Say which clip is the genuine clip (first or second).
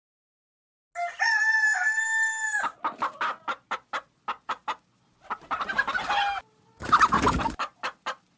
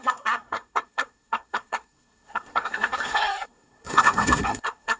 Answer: first